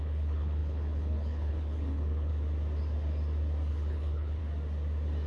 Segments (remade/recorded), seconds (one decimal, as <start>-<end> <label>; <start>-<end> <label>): 0.0-2.3 remade; 2.3-3.7 recorded; 3.7-4.4 remade; 4.4-5.3 recorded